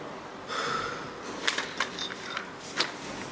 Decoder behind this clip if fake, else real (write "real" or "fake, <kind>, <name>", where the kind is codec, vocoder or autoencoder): real